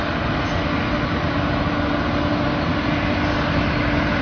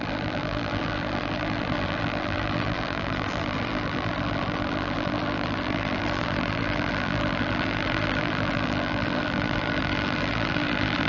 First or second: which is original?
first